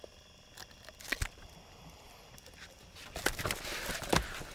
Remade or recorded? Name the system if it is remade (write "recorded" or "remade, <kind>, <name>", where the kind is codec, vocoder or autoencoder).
recorded